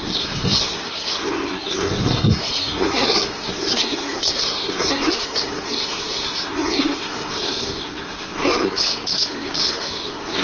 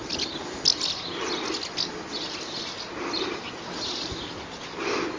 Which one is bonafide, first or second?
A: second